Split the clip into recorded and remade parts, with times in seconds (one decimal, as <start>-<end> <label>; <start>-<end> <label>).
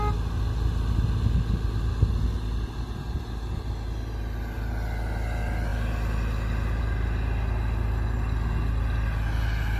0.0-9.8 recorded